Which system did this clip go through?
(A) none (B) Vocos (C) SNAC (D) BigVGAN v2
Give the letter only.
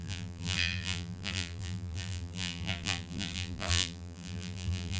D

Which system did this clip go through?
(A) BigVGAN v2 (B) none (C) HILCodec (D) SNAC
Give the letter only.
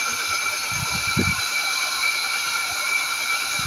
A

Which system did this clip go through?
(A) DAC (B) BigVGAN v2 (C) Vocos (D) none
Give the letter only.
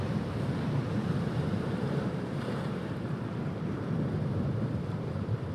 B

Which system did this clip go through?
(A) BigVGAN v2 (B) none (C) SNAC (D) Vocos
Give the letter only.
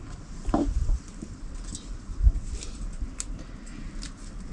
B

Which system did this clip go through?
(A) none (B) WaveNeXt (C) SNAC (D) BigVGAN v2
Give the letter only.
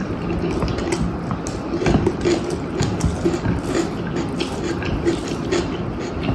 A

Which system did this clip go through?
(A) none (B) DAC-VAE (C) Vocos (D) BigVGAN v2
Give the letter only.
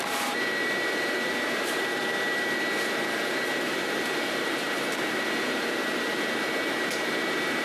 D